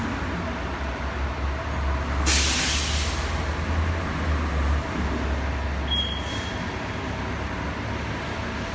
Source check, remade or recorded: recorded